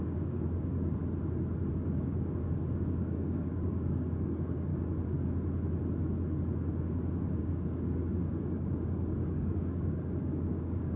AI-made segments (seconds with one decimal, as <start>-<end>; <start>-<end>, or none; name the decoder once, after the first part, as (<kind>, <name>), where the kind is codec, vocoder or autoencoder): 0.0-1.0 (codec, DAC); 1.7-4.7; 7.4-11.0